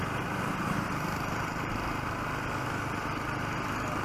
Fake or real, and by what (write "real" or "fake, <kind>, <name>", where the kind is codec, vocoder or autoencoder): real